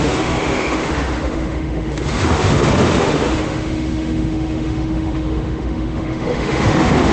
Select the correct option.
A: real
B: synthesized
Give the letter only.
B